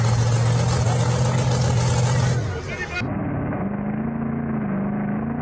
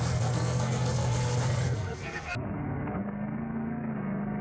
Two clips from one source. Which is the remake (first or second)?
second